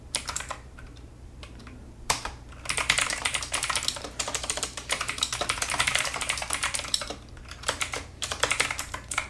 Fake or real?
fake